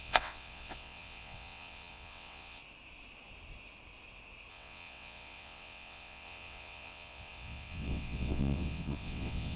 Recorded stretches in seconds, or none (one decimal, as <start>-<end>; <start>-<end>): 2.6-4.5